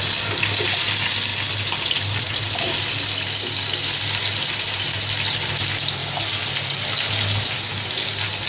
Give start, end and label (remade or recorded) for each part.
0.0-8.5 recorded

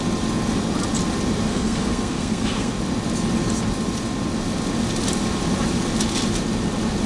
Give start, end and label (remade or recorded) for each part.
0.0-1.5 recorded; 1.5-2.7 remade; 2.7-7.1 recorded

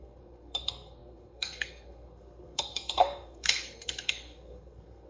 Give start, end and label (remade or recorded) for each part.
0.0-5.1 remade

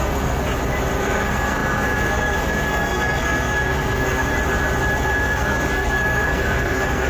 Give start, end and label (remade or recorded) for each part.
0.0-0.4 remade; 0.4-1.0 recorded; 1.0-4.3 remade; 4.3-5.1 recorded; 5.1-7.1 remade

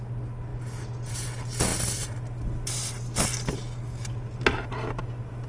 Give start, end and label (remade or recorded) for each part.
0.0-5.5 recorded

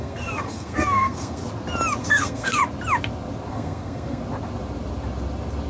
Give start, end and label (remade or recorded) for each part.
0.0-1.4 remade; 1.4-2.0 recorded; 2.0-2.6 remade; 2.6-3.5 recorded; 3.5-4.2 remade; 4.2-5.7 recorded